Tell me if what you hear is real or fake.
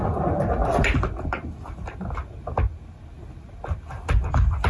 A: real